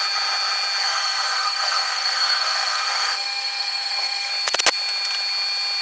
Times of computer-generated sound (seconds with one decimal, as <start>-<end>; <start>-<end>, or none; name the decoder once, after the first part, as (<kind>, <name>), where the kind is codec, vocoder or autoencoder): 0.8-4.3 (codec, SNAC)